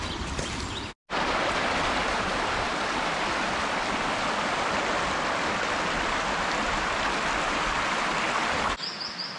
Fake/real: real